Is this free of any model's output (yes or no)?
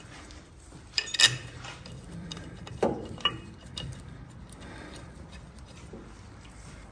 no